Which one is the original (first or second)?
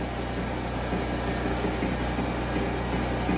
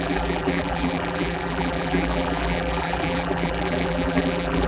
first